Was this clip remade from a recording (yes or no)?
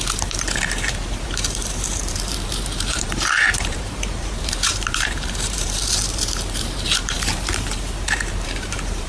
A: yes